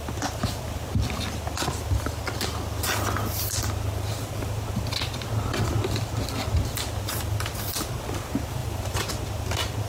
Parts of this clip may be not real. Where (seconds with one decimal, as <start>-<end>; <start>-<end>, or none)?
8.6-9.1